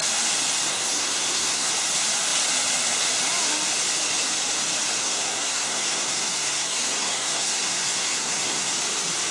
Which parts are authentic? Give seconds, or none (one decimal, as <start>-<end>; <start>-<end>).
0.0-0.7; 1.7-5.0; 8.7-9.3